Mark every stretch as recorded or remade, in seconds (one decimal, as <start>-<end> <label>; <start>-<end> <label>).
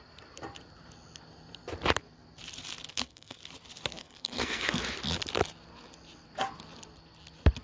0.0-2.9 recorded; 2.9-3.4 remade; 3.4-4.0 recorded; 4.0-4.8 remade; 4.8-7.6 recorded